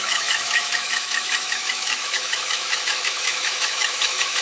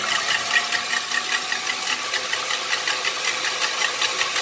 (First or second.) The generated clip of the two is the first